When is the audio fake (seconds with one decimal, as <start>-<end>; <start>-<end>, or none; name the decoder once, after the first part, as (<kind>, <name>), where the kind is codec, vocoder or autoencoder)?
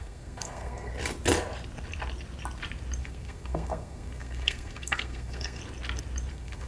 0.0-0.9 (codec, SNAC); 3.0-5.6; 6.3-6.7